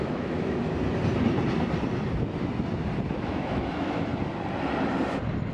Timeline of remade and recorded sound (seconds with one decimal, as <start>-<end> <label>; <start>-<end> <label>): 0.0-0.6 remade; 0.6-3.2 recorded; 3.2-4.1 remade; 4.1-5.5 recorded